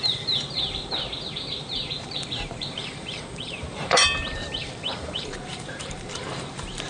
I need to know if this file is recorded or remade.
remade